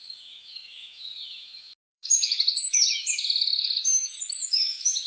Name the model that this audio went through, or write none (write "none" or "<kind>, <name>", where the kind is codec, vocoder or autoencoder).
autoencoder, DAC-VAE